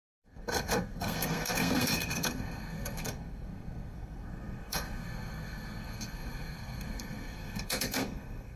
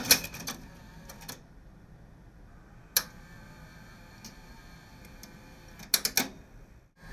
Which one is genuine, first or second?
second